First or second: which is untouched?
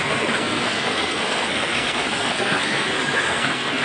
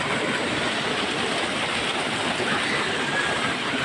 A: second